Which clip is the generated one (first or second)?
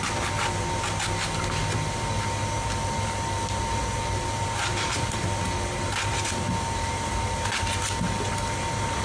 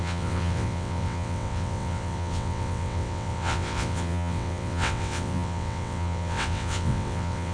second